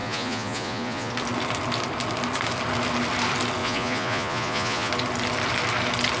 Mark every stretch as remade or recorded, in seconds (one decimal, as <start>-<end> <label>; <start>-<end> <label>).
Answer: 0.0-1.1 remade; 1.1-3.6 recorded; 3.6-4.9 remade; 4.9-6.2 recorded